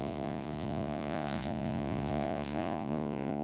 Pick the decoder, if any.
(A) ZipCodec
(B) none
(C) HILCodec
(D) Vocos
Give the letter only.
D